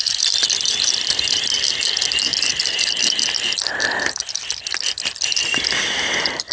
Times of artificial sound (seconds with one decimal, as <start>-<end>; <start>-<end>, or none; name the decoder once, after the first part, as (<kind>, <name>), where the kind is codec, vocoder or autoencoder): 0.0-1.6 (vocoder, BigVGAN v2); 2.3-6.5